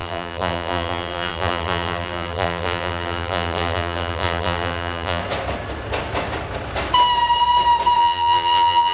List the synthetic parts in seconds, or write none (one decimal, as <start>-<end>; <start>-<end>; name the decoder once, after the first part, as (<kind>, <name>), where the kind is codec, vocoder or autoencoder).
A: 0.0-5.2 (vocoder, BigVGAN v2); 8.0-8.9